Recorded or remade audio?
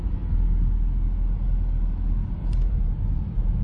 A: recorded